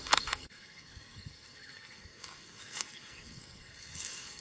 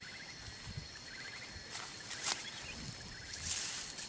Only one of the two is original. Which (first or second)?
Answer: second